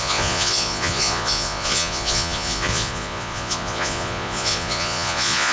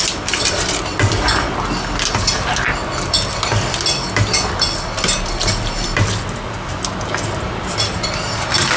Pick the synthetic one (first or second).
first